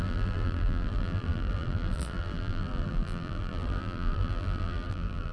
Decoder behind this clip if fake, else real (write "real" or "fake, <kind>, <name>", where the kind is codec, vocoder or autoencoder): fake, vocoder, BigVGAN v2